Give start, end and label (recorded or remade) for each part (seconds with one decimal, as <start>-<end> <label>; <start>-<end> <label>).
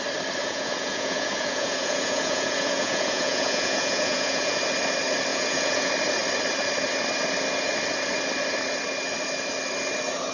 0.0-0.4 recorded; 0.4-4.6 remade; 4.6-5.3 recorded; 5.3-5.9 remade; 5.9-10.3 recorded